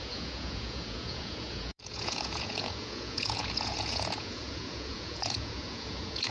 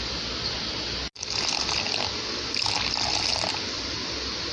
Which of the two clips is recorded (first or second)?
second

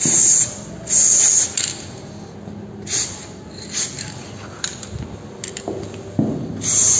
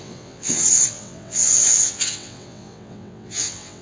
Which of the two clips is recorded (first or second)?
first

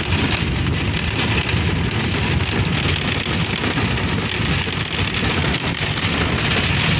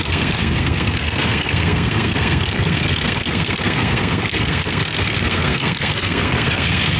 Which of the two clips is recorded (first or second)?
first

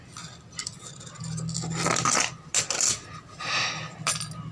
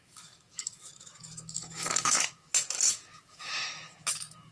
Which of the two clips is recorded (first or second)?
first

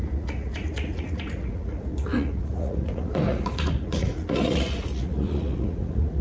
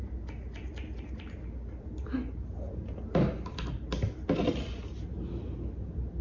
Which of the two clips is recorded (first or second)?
second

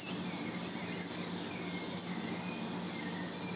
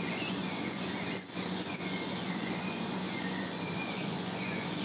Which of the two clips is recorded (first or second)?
first